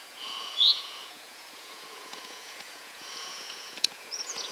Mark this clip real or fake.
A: fake